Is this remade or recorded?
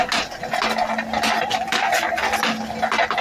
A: recorded